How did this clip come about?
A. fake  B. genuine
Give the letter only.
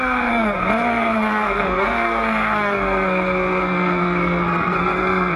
A